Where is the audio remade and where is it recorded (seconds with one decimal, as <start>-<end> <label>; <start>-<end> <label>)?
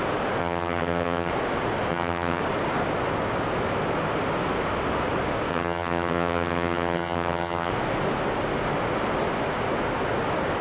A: 0.0-0.4 recorded; 0.4-1.3 remade; 1.3-1.9 recorded; 1.9-2.4 remade; 2.4-5.5 recorded; 5.5-7.7 remade; 7.7-10.6 recorded